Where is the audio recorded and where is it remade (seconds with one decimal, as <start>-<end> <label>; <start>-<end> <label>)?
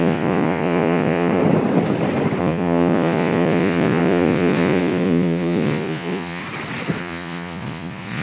0.0-1.4 remade; 1.4-2.4 recorded; 2.4-6.4 remade; 6.4-7.0 recorded; 7.0-8.2 remade